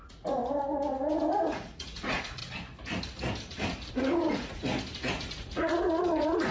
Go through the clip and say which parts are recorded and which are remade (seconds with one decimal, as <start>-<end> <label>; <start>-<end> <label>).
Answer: 0.0-0.4 remade; 0.4-1.1 recorded; 1.1-2.4 remade; 2.4-3.9 recorded; 3.9-4.6 remade; 4.6-5.1 recorded; 5.1-6.5 remade